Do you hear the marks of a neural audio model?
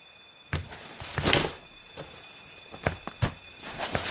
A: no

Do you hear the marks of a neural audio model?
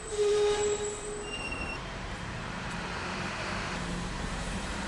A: yes